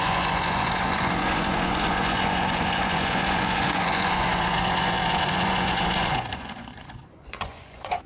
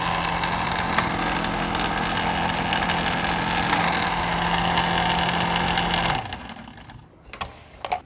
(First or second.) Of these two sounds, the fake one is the first